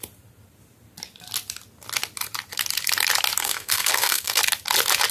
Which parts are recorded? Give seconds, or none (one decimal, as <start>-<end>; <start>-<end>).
0.0-3.4; 4.4-5.1